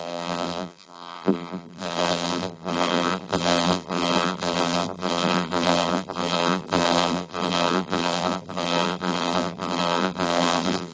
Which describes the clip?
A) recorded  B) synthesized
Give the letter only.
B